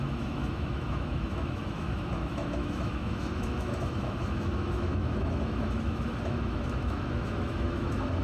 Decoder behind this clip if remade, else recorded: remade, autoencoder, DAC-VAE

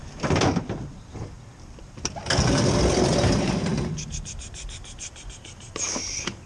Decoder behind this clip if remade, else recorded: recorded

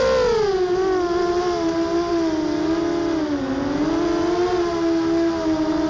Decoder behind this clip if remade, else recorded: recorded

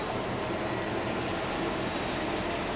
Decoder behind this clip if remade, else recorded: recorded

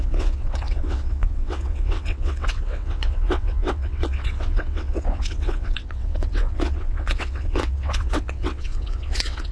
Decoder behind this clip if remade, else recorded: remade, vocoder, WaveNeXt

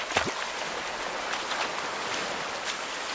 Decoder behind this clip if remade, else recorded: recorded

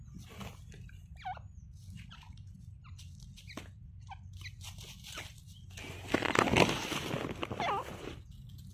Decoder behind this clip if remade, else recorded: recorded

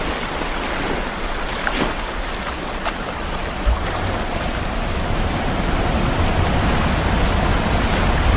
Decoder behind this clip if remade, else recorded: recorded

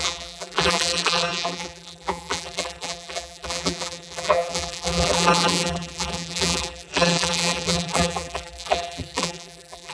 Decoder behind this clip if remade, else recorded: remade, vocoder, BigVGAN v2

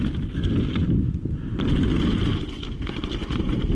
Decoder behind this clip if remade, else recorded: recorded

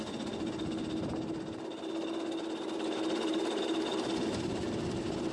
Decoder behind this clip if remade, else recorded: recorded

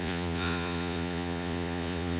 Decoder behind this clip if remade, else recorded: remade, vocoder, Vocos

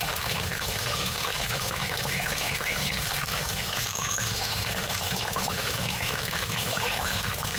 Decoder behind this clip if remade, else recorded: remade, autoencoder, DAC-VAE